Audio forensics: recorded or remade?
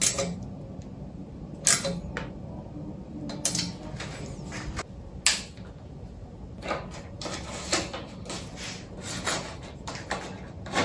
recorded